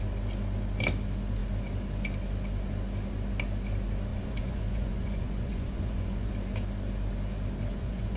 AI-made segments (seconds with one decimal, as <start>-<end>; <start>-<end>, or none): 4.1-6.3; 7.7-8.2